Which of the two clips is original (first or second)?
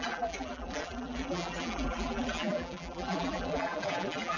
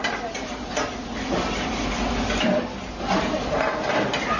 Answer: second